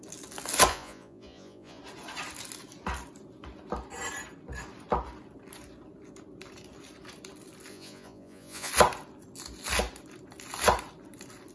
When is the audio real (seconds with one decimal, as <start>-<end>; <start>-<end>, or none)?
0.0-0.7; 1.8-7.7; 8.7-11.5